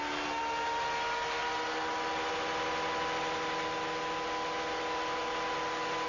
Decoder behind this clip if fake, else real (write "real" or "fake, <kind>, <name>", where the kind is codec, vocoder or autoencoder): real